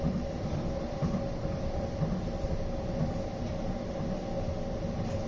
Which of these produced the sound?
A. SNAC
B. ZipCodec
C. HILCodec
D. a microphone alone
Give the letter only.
D